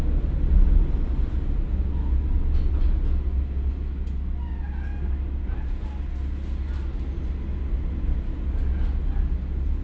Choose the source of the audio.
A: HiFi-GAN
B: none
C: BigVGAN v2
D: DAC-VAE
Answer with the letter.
B